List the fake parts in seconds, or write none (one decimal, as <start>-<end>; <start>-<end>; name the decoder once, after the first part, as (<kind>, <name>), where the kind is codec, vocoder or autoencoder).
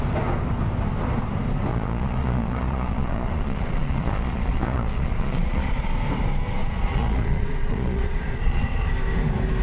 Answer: 1.7-5.9 (vocoder, Vocos); 6.6-8.9